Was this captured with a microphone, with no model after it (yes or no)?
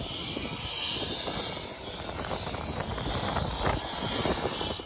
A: yes